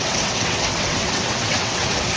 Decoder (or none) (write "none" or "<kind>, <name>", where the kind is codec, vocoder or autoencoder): vocoder, WaveNeXt